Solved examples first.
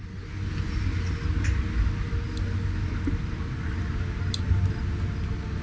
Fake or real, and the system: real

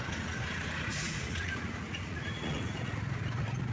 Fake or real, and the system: fake, vocoder, Vocos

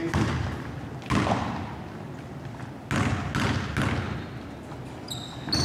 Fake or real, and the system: real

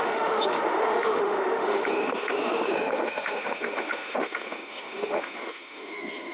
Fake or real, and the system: fake, autoencoder, DAC-VAE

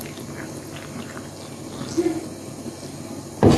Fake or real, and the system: real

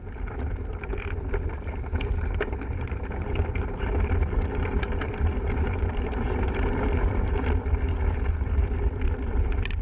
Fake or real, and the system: fake, vocoder, BigVGAN v2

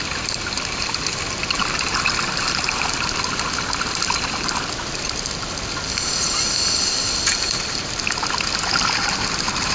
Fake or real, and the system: real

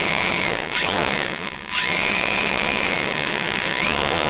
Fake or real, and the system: fake, vocoder, WaveNeXt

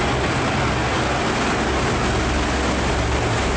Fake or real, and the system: real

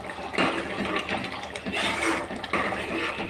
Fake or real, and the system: real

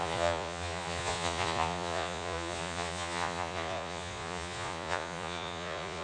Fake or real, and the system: fake, vocoder, Vocos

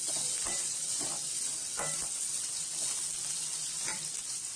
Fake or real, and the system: real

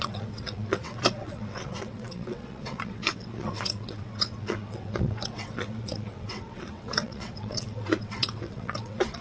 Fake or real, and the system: fake, vocoder, WaveNeXt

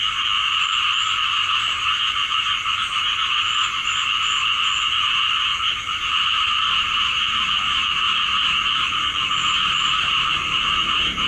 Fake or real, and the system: fake, vocoder, BigVGAN v2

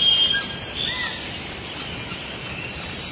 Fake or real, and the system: real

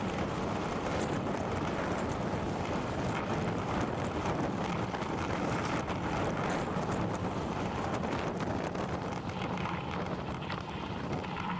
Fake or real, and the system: real